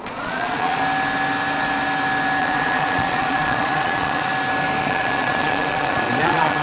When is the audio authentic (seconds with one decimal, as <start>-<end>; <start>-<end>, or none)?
0.8-2.4; 4.3-4.8